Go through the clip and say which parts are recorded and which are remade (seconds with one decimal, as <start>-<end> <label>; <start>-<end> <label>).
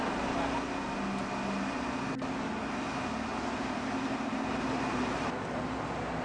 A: 0.0-3.3 recorded; 3.3-5.3 remade; 5.3-6.2 recorded